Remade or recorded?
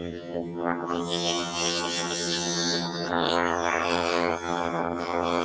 remade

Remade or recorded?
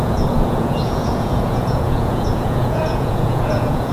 remade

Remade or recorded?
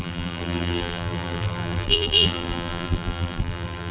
remade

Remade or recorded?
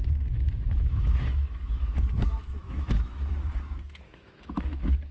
remade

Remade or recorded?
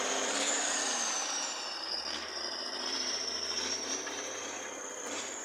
remade